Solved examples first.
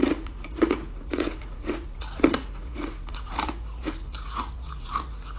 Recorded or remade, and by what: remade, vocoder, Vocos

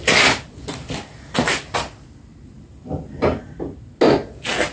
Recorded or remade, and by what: recorded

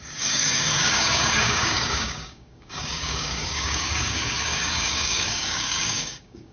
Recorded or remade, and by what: remade, codec, DAC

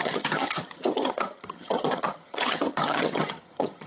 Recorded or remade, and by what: remade, vocoder, HiFi-GAN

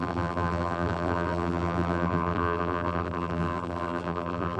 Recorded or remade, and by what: remade, vocoder, BigVGAN v2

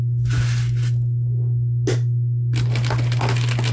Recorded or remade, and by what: recorded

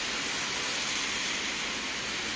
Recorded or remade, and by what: recorded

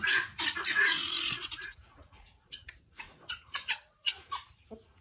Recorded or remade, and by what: remade, vocoder, Vocos